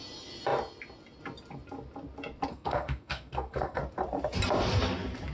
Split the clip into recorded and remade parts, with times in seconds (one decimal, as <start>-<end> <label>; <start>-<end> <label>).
0.0-2.5 recorded; 2.5-3.8 remade; 3.8-5.3 recorded